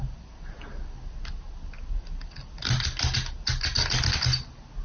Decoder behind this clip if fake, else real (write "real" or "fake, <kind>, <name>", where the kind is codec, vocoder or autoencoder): real